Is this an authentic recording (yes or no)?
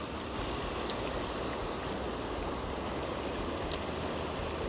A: yes